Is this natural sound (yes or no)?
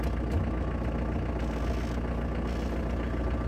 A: yes